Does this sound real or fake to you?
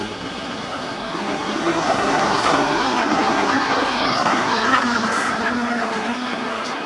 fake